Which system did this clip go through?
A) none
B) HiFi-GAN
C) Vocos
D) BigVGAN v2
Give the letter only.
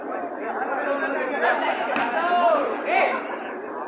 A